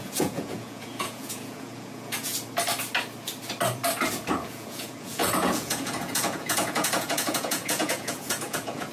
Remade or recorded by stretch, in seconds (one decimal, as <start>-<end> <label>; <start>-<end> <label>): 0.0-2.3 remade; 2.3-4.3 recorded; 4.3-8.9 remade